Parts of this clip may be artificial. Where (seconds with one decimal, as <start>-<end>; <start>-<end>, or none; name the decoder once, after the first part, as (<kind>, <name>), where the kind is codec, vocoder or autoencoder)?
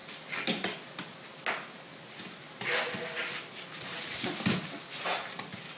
none